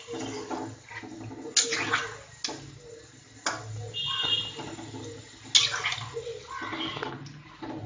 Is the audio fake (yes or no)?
no